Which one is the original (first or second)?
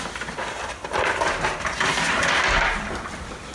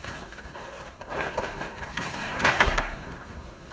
first